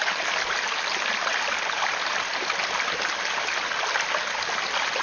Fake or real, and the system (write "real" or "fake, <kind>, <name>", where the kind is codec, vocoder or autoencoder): real